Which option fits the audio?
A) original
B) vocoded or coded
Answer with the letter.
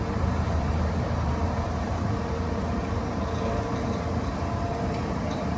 B